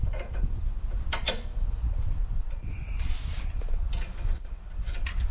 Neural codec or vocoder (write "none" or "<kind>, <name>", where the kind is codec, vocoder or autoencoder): vocoder, BigVGAN v2